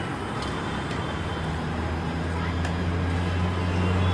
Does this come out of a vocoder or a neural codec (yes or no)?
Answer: no